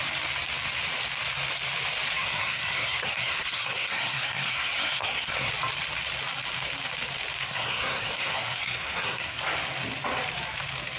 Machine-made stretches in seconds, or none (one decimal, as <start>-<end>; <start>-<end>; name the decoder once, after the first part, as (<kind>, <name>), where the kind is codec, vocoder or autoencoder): 2.2-5.5 (codec, SNAC); 7.4-9.4